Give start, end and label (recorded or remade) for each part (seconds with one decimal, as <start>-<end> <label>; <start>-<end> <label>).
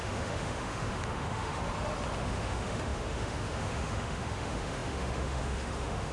0.0-1.6 remade; 1.6-2.2 recorded; 2.2-6.1 remade